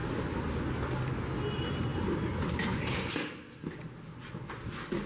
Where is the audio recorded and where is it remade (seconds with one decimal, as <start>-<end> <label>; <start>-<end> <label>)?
0.0-5.1 recorded